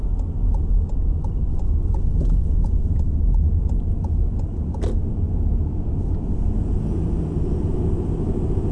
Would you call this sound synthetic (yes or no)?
no